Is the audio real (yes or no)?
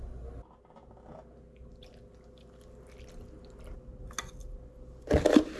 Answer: yes